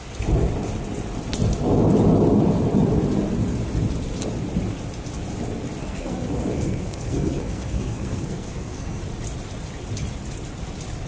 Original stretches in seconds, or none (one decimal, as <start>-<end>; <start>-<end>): 0.0-5.8; 9.0-11.1